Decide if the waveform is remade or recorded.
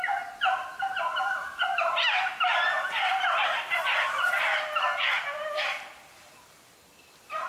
recorded